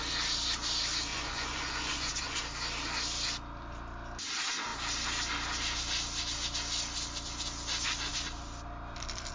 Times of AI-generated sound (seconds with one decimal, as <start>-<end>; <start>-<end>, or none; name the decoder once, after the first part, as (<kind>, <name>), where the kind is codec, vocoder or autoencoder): 1.1-2.4 (vocoder, Vocos)